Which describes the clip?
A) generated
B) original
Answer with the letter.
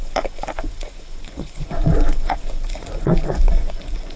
A